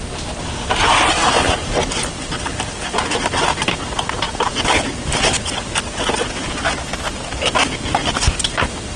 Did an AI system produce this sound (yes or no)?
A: no